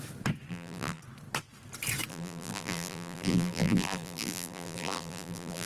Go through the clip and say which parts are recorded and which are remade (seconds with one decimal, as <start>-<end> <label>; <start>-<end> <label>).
0.0-0.5 recorded; 0.5-1.0 remade; 1.0-2.1 recorded; 2.1-5.7 remade